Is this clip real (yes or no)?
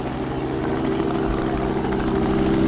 yes